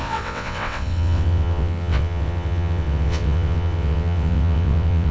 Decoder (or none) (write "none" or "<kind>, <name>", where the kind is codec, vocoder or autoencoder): vocoder, WaveNeXt